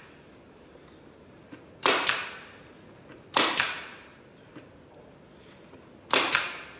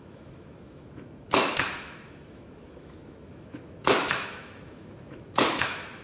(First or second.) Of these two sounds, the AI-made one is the second